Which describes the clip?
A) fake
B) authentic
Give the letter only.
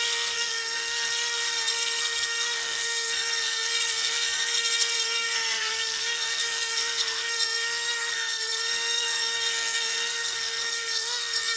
A